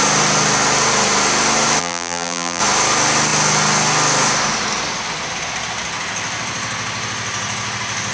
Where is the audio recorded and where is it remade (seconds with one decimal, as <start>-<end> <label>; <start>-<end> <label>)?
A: 0.0-1.8 recorded; 1.8-2.6 remade; 2.6-8.1 recorded